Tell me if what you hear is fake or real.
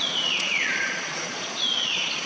fake